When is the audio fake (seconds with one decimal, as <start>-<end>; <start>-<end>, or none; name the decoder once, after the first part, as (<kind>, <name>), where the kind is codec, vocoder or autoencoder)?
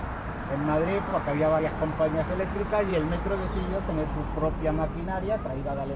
1.1-1.6 (autoencoder, DAC-VAE)